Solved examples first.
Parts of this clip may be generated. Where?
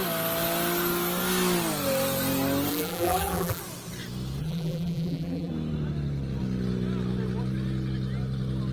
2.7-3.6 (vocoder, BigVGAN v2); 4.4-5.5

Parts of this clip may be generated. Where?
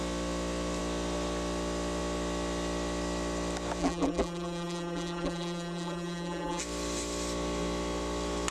3.8-6.6 (vocoder, BigVGAN v2)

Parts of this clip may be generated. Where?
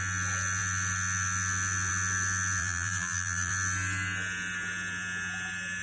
2.6-3.5 (vocoder, BigVGAN v2)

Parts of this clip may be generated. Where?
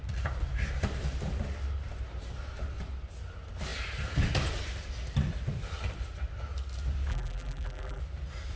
7.1-8.0 (vocoder, BigVGAN v2)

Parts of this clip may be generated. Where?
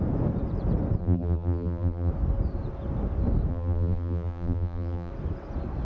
1.0-2.1 (vocoder, BigVGAN v2); 3.5-5.1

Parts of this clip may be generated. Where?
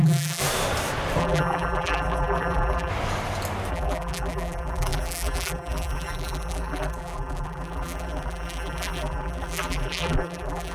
0.0-0.4 (vocoder, BigVGAN v2); 1.2-2.9; 3.7-10.7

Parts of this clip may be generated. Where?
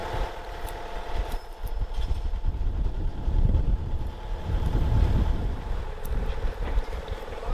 1.2-1.6 (vocoder, BigVGAN v2); 2.8-7.5